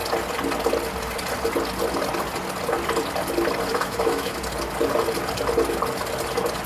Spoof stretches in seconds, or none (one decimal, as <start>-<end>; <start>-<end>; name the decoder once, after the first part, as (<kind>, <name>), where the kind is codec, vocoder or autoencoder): 3.7-4.4 (autoencoder, DAC-VAE)